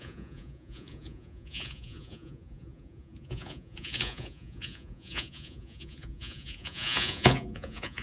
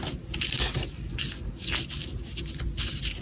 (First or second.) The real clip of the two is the second